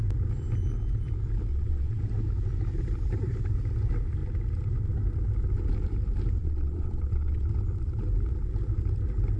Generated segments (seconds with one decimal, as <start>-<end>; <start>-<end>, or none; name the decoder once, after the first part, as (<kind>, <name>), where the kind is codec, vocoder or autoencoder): 1.5-2.0 (vocoder, WaveNeXt); 6.4-7.5